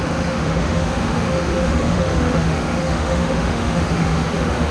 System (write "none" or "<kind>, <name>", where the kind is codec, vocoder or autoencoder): autoencoder, DAC-VAE